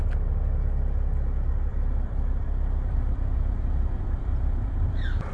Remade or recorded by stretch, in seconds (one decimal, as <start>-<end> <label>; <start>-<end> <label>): 0.0-1.7 recorded; 1.7-5.3 remade